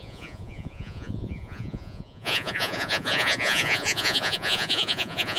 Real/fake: fake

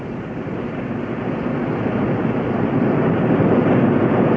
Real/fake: real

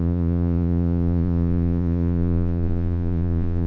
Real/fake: fake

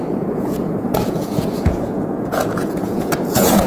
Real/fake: fake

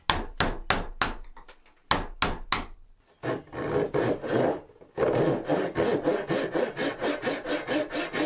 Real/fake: real